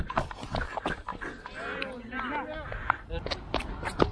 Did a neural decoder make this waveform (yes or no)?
no